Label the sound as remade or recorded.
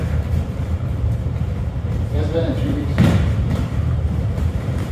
remade